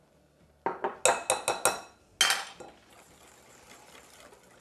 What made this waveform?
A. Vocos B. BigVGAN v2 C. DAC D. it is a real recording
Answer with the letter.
D